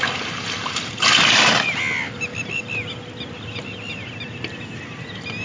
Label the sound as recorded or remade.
recorded